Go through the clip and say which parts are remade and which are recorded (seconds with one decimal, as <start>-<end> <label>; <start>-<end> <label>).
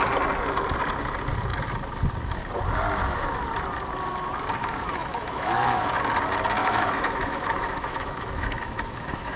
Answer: 0.0-4.6 recorded; 4.6-5.9 remade; 5.9-6.6 recorded; 6.6-9.4 remade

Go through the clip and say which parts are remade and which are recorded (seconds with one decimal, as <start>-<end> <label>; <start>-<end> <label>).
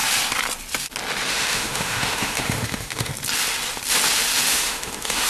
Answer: 0.0-1.3 recorded; 1.3-3.1 remade; 3.1-4.5 recorded; 4.5-5.3 remade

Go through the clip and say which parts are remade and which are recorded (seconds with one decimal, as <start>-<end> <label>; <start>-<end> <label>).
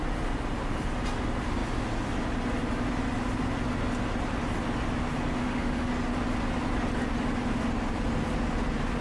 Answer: 0.0-5.4 recorded; 5.4-5.9 remade; 5.9-9.0 recorded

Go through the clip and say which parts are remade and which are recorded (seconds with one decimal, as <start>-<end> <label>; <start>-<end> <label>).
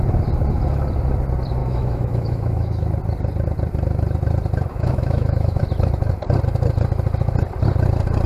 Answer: 0.0-1.6 recorded; 1.6-2.9 remade; 2.9-4.7 recorded; 4.7-5.6 remade; 5.6-8.3 recorded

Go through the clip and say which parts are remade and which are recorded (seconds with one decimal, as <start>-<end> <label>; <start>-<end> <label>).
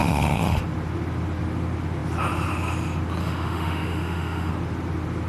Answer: 0.0-0.6 remade; 0.6-3.2 recorded; 3.2-4.5 remade; 4.5-5.3 recorded